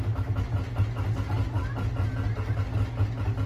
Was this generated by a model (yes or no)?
no